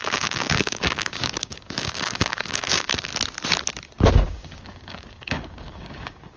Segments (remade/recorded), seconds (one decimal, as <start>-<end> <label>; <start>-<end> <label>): 0.0-3.1 remade; 3.1-4.1 recorded; 4.1-6.4 remade